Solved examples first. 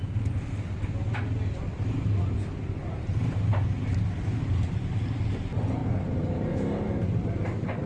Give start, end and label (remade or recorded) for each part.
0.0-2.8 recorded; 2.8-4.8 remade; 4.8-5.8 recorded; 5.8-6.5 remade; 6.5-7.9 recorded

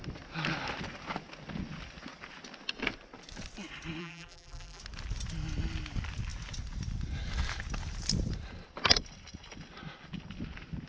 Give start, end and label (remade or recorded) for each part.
0.0-4.0 recorded; 4.0-4.8 remade; 4.8-10.9 recorded